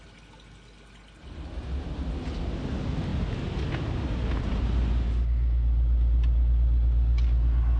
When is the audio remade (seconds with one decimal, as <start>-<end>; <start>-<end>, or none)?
none